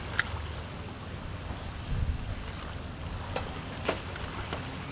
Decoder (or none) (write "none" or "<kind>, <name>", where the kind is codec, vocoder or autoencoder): none